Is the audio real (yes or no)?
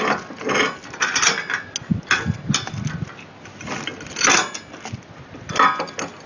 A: yes